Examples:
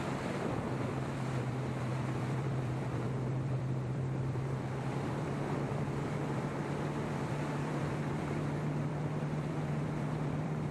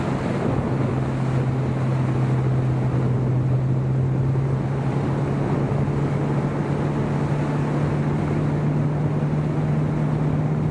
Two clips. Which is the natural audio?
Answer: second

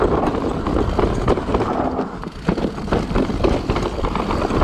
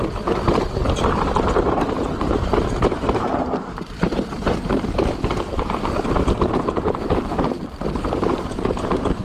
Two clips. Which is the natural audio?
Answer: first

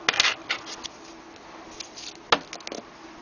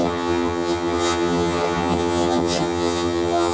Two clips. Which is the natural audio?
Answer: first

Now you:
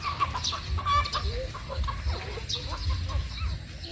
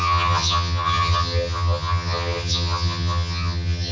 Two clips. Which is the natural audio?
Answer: first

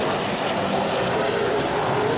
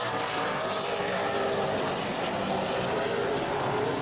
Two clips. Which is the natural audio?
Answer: second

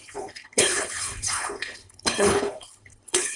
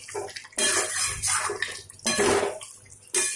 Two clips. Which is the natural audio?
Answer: second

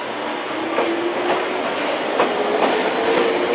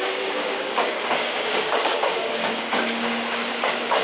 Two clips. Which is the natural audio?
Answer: first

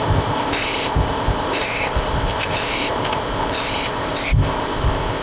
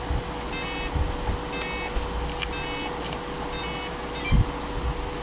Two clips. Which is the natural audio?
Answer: second